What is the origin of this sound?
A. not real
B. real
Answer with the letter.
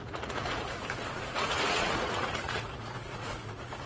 A